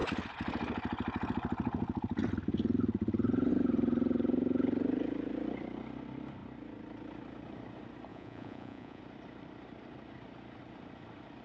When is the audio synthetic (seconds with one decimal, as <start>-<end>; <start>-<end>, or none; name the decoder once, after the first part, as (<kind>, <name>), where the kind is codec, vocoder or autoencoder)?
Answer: 8.1-9.0 (vocoder, Vocos)